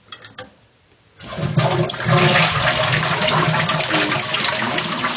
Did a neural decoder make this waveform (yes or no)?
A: no